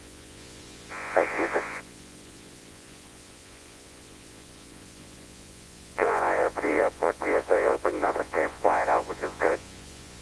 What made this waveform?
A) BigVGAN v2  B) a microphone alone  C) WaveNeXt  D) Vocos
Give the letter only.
D